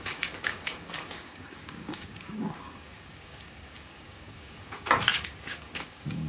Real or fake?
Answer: fake